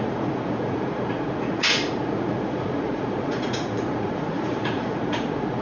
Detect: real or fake fake